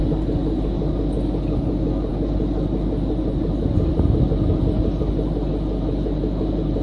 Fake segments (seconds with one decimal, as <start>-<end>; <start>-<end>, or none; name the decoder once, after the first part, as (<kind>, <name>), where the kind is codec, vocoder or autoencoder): none